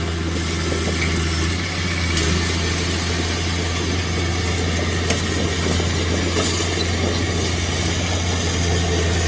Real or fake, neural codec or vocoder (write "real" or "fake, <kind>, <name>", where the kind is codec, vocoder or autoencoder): real